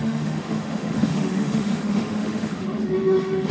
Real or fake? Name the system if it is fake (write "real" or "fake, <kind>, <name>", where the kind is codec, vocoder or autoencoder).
fake, autoencoder, DAC-VAE